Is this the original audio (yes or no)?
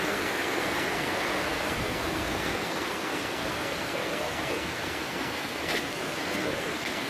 no